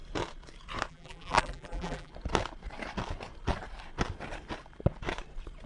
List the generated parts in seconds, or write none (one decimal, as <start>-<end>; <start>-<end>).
0.9-2.1